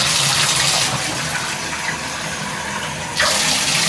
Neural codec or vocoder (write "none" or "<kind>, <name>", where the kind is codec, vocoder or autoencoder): none